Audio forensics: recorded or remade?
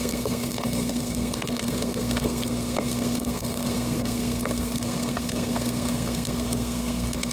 remade